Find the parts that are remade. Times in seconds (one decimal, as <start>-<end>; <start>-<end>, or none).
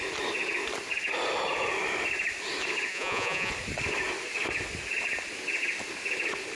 2.9-3.5